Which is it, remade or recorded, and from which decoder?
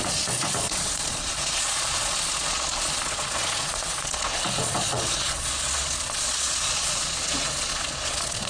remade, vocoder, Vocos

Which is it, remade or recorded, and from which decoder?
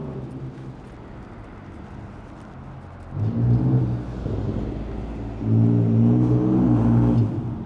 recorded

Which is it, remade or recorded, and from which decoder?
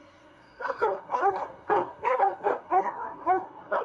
remade, codec, SNAC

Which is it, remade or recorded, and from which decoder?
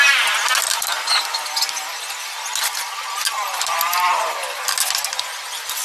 recorded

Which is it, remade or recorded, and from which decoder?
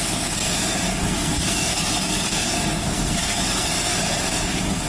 remade, codec, SNAC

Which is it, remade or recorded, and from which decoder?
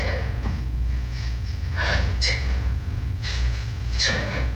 recorded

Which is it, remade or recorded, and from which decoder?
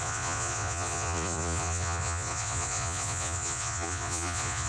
remade, vocoder, Vocos